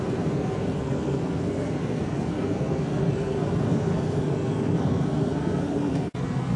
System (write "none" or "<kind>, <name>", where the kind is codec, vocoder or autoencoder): codec, SNAC